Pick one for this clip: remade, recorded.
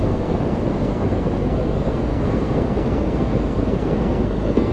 remade